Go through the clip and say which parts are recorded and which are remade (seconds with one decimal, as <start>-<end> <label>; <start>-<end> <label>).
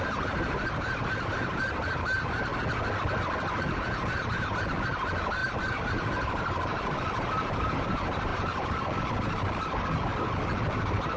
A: 0.0-2.5 remade; 2.5-3.6 recorded; 3.6-10.1 remade; 10.1-10.6 recorded; 10.6-11.2 remade